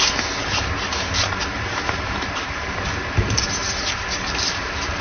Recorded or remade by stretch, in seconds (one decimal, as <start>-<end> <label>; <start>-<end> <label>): 0.0-0.4 recorded; 0.4-3.4 remade; 3.4-5.0 recorded